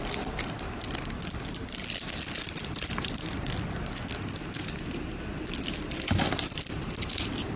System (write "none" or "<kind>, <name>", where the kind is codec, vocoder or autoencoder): none